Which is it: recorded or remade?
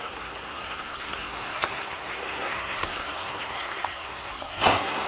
remade